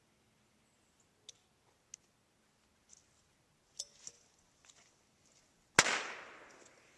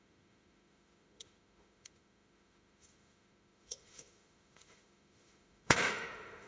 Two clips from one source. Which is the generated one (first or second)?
second